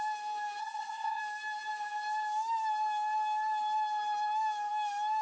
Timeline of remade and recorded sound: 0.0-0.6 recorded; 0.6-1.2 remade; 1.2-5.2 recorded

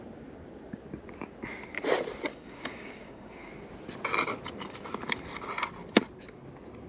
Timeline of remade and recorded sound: 0.0-2.3 recorded; 2.3-3.5 remade; 3.5-6.9 recorded